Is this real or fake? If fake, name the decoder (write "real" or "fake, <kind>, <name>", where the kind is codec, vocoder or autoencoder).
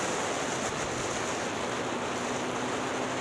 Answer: real